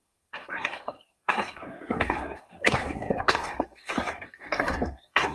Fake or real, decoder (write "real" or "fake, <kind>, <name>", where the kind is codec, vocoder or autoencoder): fake, codec, SNAC